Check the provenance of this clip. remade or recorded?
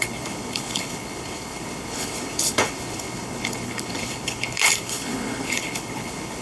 remade